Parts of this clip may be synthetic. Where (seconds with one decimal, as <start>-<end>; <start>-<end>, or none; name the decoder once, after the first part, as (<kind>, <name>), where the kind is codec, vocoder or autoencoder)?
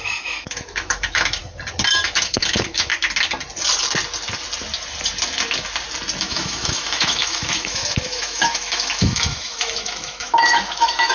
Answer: 0.0-1.4 (autoencoder, DAC-VAE); 1.9-2.9; 6.2-11.1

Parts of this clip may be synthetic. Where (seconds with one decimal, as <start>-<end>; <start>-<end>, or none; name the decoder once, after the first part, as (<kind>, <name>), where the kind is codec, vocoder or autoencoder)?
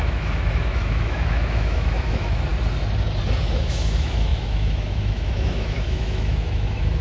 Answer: 0.0-2.5 (autoencoder, DAC-VAE); 3.4-7.0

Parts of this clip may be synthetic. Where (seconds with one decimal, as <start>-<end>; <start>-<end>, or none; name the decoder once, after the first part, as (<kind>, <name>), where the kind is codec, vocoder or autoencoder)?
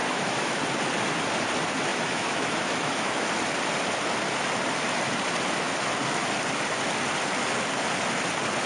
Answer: 0.0-0.6 (autoencoder, DAC-VAE); 1.9-3.3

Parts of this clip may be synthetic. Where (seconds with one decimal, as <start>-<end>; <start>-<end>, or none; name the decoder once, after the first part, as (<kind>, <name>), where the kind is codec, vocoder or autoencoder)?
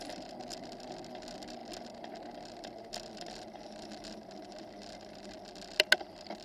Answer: none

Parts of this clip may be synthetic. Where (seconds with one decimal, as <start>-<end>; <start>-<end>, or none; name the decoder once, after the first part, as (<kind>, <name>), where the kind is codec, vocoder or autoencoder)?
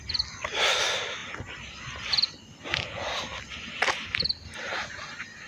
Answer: none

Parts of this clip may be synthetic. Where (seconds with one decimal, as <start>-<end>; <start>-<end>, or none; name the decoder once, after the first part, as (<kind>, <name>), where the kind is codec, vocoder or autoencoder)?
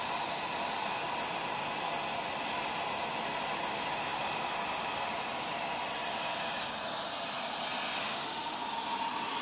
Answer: 8.0-8.6 (autoencoder, DAC-VAE)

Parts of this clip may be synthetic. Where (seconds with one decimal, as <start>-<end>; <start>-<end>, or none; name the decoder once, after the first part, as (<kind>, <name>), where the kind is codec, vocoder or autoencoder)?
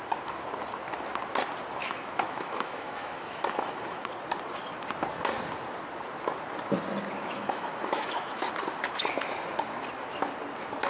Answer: 1.8-4.1 (autoencoder, DAC-VAE); 7.2-8.5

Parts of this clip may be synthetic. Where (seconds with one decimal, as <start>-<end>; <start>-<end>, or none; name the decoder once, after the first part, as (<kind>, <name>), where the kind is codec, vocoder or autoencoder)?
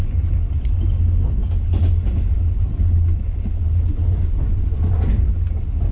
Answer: none